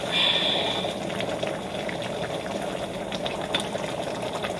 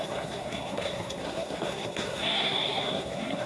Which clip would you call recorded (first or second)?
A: first